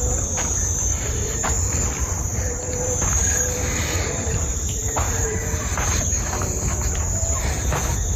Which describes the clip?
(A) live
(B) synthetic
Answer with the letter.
B